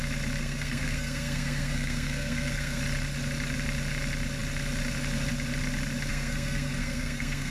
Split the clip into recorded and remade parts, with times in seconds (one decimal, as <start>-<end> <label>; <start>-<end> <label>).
0.0-0.4 recorded; 0.4-2.8 remade; 2.8-6.1 recorded; 6.1-7.5 remade